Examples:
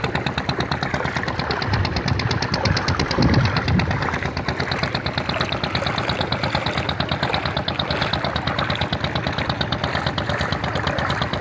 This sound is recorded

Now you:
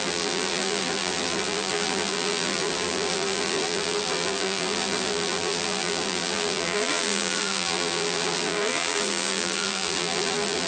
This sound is remade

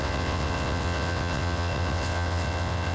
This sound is remade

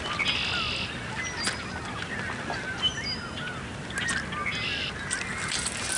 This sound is recorded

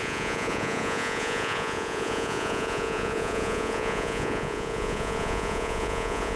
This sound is remade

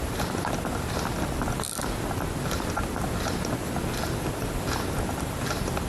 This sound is recorded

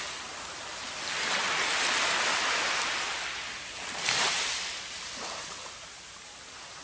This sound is recorded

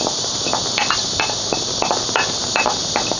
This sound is recorded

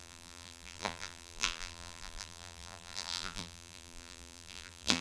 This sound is remade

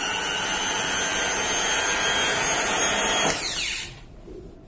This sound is recorded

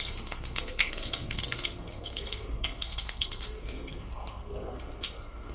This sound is remade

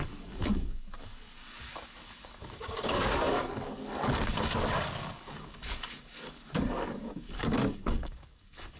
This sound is remade